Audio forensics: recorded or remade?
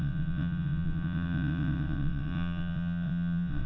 remade